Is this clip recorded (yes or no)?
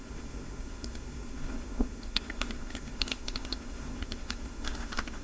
no